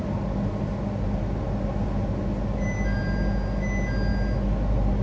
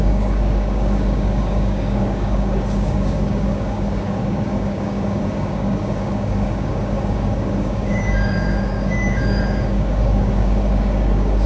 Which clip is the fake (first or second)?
second